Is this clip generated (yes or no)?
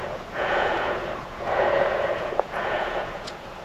yes